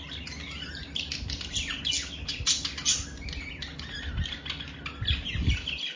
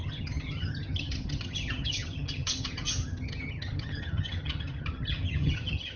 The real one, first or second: first